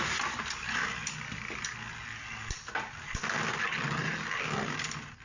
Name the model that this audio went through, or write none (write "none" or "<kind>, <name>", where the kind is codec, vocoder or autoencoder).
none